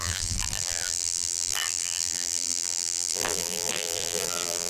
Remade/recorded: remade